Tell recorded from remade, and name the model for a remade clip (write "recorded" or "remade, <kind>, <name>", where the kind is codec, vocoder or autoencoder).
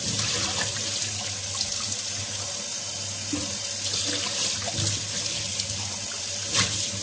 recorded